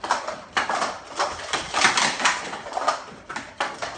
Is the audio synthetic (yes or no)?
no